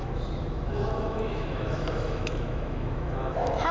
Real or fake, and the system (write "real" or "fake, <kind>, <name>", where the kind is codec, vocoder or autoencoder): fake, autoencoder, DAC-VAE